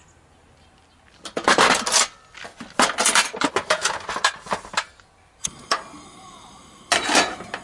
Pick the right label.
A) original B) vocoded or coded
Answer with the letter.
A